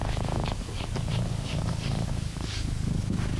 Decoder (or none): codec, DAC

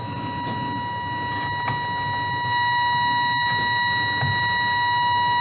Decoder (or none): none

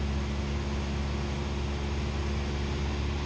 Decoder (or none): none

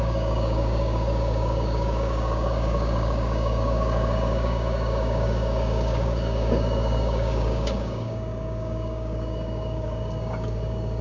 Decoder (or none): codec, DAC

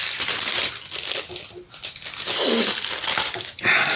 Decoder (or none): none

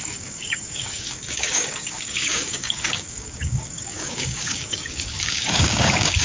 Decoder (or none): codec, DAC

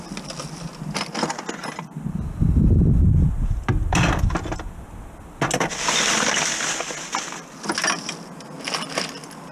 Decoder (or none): none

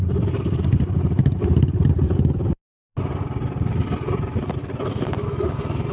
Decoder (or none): none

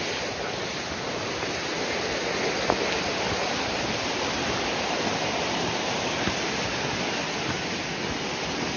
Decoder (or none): none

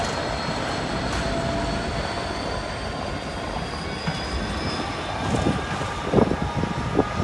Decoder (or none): none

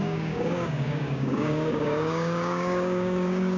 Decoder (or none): codec, DAC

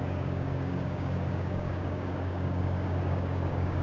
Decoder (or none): codec, DAC